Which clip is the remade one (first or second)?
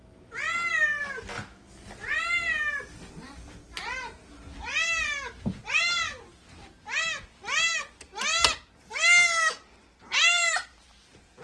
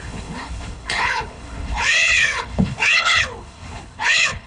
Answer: second